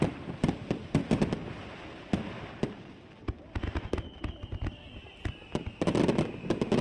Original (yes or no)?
no